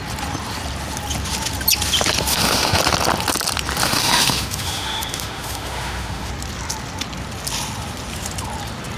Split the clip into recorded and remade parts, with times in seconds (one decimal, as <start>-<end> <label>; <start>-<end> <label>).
0.0-2.3 recorded; 2.3-2.8 remade; 2.8-3.8 recorded; 3.8-6.3 remade; 6.3-9.0 recorded